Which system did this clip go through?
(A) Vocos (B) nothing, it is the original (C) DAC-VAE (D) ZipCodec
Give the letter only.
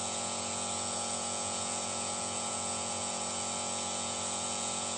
A